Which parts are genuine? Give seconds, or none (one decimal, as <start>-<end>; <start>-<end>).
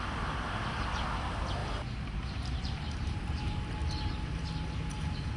0.0-1.6; 3.4-3.8; 4.4-5.4